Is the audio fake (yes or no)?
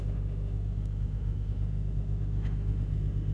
yes